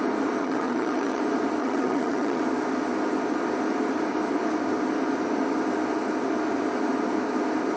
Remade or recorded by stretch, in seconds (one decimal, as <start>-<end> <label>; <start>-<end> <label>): 0.0-0.4 recorded; 0.4-1.2 remade; 1.2-1.6 recorded; 1.6-2.4 remade; 2.4-7.8 recorded